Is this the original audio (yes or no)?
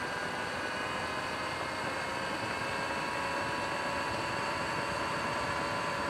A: yes